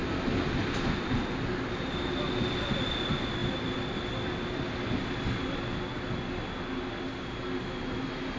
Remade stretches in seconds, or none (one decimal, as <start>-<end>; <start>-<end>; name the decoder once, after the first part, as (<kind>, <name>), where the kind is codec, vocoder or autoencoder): none